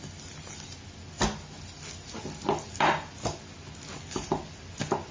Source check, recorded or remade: recorded